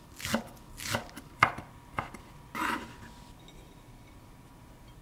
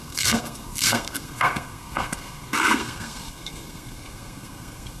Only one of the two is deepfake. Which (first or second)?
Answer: second